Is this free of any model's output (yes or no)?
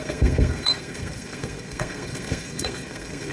no